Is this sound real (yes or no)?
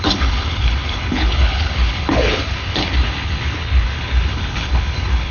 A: no